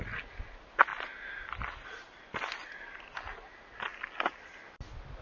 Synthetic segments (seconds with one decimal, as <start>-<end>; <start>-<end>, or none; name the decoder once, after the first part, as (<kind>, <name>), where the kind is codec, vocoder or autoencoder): 0.9-3.0 (vocoder, BigVGAN v2)